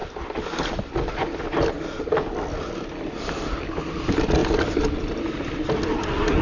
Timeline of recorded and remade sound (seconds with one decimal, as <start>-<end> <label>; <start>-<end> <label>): 0.0-6.4 recorded